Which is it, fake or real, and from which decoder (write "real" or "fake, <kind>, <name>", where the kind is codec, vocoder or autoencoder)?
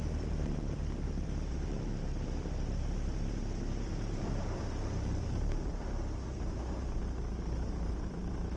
fake, vocoder, BigVGAN v2